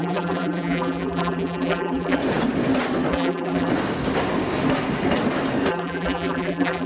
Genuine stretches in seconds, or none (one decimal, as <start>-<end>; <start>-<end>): 2.2-3.1; 3.7-5.7